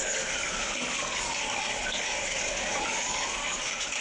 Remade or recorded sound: remade